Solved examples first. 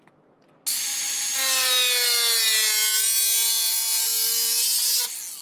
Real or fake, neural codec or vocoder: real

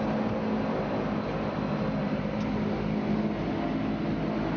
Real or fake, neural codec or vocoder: real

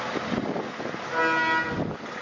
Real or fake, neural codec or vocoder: real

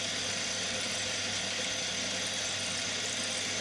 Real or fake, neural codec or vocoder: real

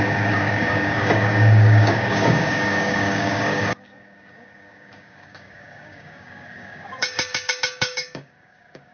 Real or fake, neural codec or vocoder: fake, codec, DAC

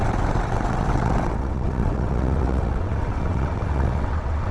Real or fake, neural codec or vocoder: fake, vocoder, WaveNeXt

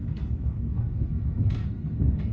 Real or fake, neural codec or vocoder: fake, codec, SNAC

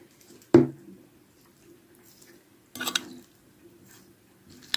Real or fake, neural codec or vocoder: real